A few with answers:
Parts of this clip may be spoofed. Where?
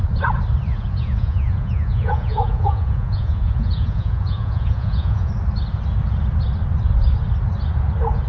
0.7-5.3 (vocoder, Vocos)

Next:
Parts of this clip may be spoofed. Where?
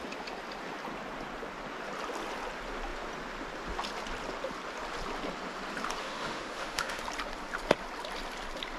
6.0-7.0 (autoencoder, DAC-VAE)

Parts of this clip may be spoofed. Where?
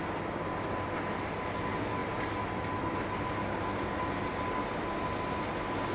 none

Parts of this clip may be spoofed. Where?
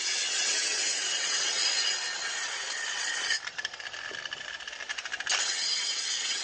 0.0-1.6 (vocoder, WaveNeXt); 5.4-6.4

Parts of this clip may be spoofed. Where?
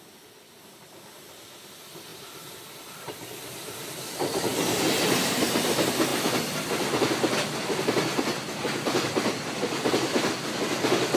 2.1-2.6 (vocoder, BigVGAN v2); 4.5-5.3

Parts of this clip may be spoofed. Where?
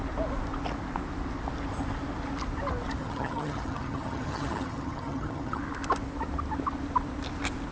3.0-5.6 (vocoder, HiFi-GAN)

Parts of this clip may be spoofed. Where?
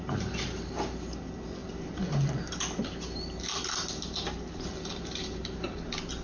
none